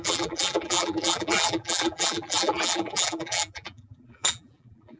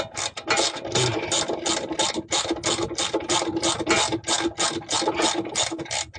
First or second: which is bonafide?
second